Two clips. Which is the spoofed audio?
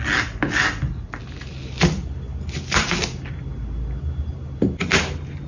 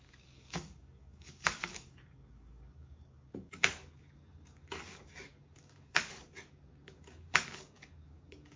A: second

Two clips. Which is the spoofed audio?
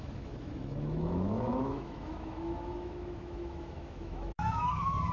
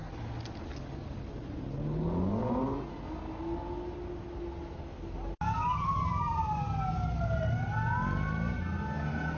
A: first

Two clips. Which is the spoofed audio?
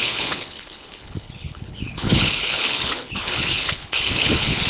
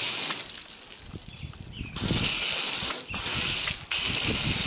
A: first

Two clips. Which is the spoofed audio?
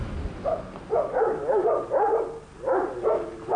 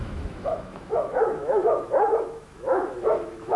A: second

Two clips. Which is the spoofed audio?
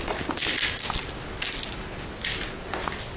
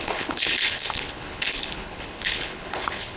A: second